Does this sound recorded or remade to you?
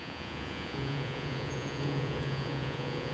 remade